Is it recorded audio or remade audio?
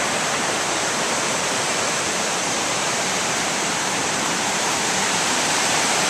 remade